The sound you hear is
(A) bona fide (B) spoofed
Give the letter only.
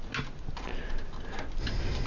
A